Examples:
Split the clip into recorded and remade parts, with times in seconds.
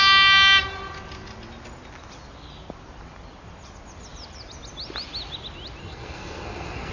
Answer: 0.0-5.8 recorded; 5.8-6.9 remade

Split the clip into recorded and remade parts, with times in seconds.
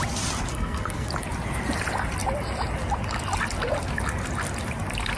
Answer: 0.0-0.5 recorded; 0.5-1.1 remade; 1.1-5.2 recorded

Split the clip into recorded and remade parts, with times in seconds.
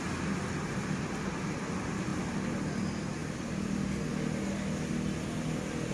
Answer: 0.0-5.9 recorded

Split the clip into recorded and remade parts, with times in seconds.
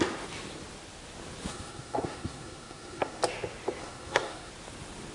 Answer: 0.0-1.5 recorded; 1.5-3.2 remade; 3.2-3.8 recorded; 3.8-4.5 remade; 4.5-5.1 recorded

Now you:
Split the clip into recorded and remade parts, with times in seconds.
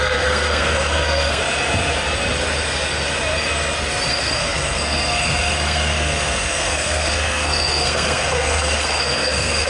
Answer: 0.0-1.4 remade; 1.4-4.1 recorded; 4.1-9.7 remade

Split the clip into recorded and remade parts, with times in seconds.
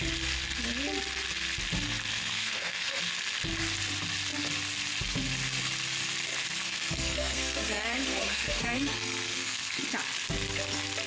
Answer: 0.0-2.1 recorded; 2.1-3.0 remade; 3.0-6.4 recorded; 6.4-9.8 remade; 9.8-11.1 recorded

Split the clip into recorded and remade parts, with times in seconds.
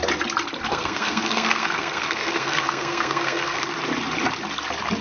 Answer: 0.0-0.7 recorded; 0.7-3.7 remade; 3.7-5.0 recorded